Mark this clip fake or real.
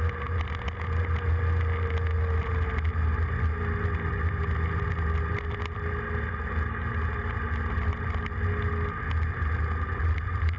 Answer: real